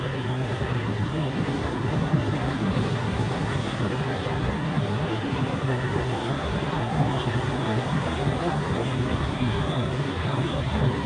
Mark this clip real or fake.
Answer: fake